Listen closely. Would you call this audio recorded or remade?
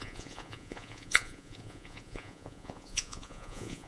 remade